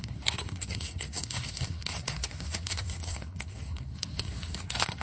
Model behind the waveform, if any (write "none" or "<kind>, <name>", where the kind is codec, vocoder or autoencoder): codec, SNAC